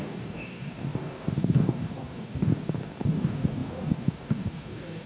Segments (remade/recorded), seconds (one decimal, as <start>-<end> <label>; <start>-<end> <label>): 0.0-5.1 remade